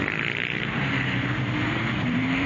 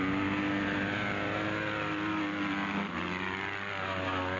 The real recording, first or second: second